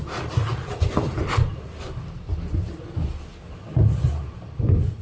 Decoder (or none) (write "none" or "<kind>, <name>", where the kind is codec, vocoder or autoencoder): none